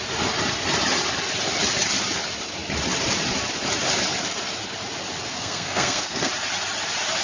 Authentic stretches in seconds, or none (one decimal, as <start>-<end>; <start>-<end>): 0.0-5.3; 6.3-7.2